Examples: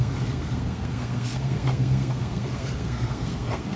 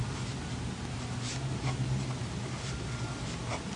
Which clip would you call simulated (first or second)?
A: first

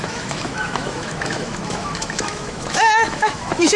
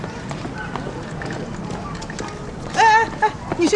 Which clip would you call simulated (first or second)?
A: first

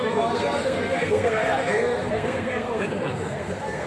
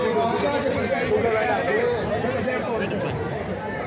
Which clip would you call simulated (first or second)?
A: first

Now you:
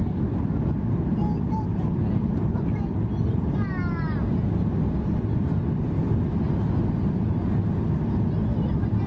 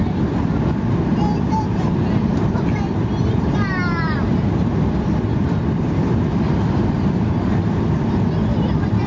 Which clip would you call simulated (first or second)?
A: second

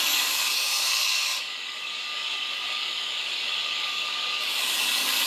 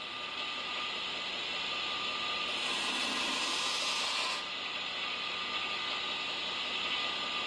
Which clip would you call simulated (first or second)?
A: first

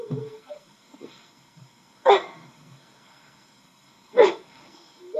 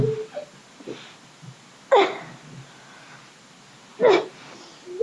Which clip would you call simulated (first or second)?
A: first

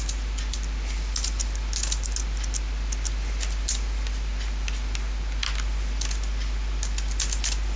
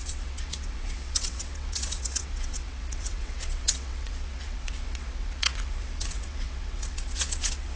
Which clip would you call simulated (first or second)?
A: second